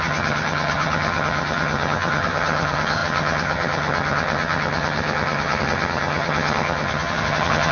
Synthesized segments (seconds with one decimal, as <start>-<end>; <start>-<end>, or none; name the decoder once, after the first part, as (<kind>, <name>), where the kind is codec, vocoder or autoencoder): 0.0-7.7 (vocoder, HiFi-GAN)